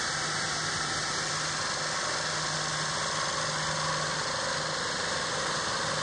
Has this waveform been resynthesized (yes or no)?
no